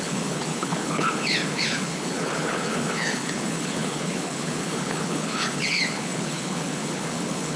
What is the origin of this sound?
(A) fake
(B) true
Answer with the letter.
A